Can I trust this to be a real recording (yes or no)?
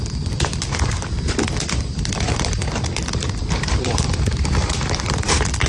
no